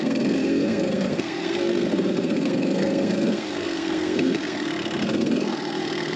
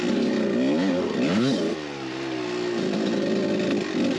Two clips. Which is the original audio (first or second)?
second